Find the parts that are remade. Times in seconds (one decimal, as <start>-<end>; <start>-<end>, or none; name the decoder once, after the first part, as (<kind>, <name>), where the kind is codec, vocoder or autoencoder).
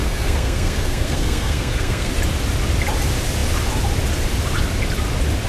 0.0-2.1 (codec, SNAC)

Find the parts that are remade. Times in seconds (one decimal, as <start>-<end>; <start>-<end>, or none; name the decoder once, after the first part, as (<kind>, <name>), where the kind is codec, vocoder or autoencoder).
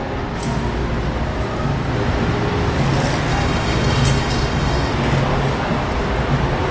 3.3-4.9 (codec, DAC)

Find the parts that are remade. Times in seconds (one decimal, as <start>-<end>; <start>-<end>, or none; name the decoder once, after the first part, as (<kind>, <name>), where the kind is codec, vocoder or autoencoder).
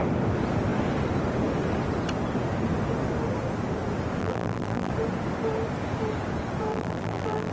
4.2-4.9 (vocoder, BigVGAN v2); 6.7-7.5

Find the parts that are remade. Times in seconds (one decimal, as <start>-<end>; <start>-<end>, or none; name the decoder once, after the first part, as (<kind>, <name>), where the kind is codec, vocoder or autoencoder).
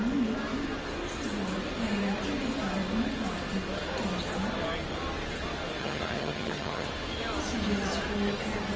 5.8-6.9 (vocoder, HiFi-GAN)